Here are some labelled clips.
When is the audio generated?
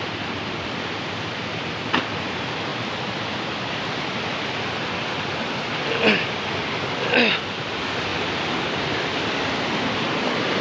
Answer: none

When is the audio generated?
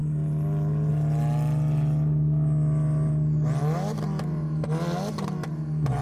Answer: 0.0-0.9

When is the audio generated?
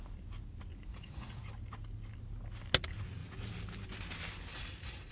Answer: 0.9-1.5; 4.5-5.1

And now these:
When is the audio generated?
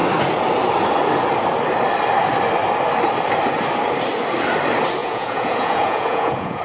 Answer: 5.0-6.6